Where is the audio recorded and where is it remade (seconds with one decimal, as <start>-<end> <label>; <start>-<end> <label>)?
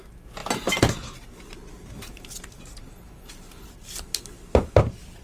0.0-5.2 recorded